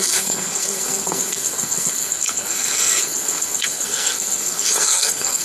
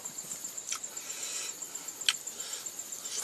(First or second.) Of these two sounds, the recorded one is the second